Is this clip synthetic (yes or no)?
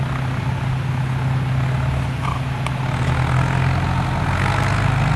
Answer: no